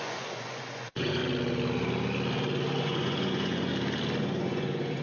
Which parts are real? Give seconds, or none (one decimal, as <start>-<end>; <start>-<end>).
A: 1.2-2.8; 3.7-4.2

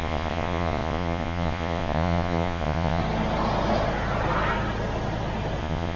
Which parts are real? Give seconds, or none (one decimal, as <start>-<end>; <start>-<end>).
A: 3.0-5.6

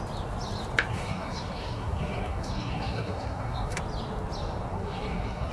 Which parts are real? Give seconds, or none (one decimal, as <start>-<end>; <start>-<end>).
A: 0.0-0.9; 3.8-4.7

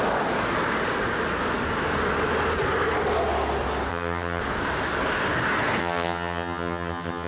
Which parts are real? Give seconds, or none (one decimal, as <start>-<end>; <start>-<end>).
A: 0.0-3.9; 4.4-5.8

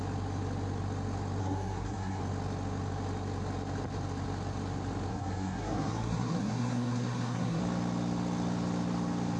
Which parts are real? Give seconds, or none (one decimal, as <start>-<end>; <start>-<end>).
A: 0.0-1.4; 2.2-5.1; 7.6-9.4